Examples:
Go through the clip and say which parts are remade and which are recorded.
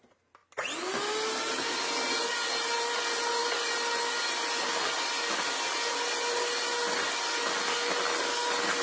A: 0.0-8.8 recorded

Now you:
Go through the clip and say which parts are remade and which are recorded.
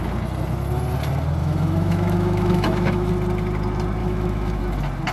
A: 0.0-1.4 recorded; 1.4-3.1 remade; 3.1-4.0 recorded; 4.0-4.6 remade; 4.6-5.1 recorded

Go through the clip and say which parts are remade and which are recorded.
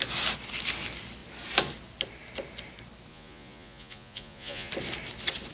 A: 0.0-3.1 recorded; 3.1-4.7 remade; 4.7-5.5 recorded